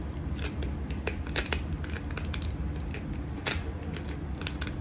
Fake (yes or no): no